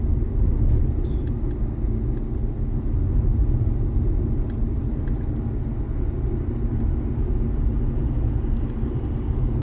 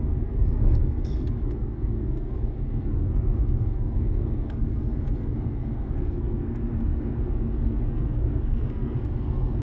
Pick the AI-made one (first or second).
second